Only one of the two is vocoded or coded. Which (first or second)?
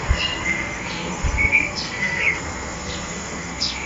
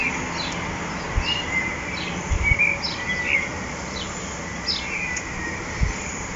first